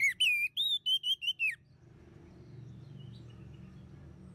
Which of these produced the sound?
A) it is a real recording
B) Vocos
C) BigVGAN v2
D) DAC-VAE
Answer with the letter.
A